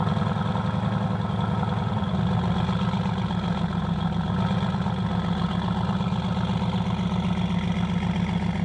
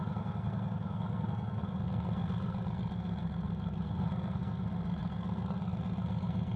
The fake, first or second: second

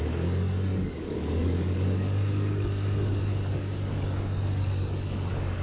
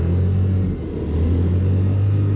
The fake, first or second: first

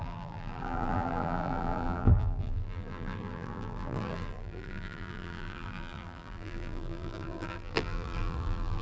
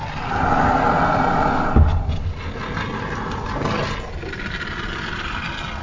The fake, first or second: first